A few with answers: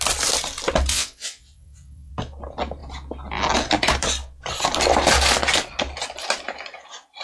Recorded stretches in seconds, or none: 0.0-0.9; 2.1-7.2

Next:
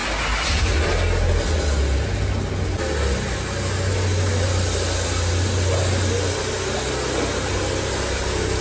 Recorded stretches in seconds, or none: 0.0-8.6